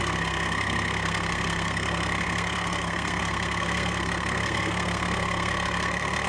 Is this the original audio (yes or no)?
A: no